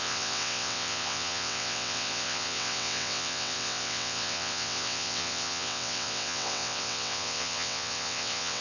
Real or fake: fake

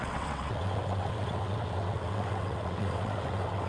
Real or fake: fake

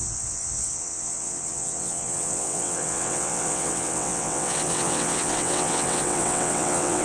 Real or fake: fake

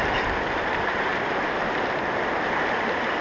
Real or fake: real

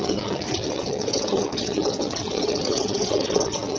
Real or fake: fake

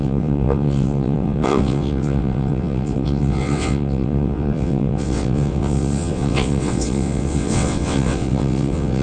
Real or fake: fake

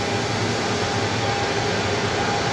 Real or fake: real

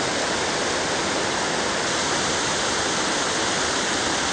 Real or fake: real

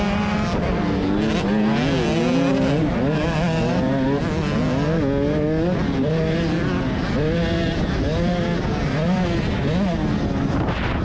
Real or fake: real